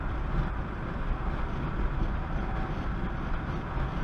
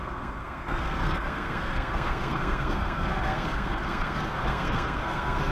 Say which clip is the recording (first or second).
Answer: first